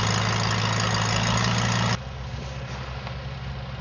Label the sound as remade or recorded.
recorded